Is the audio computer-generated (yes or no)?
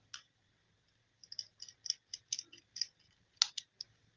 no